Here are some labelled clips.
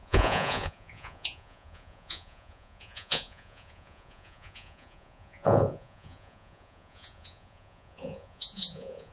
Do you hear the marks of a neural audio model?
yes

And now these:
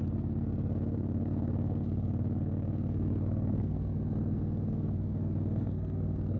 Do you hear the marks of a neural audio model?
yes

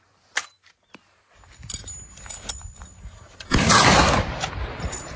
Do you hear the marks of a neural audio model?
no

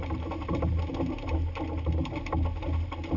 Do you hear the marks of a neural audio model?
no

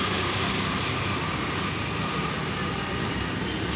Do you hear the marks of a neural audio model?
no